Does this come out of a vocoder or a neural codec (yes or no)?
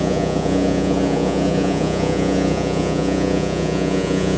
yes